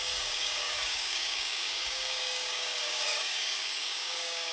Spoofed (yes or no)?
yes